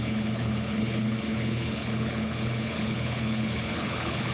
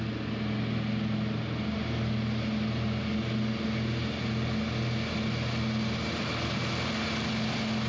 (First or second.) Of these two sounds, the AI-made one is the first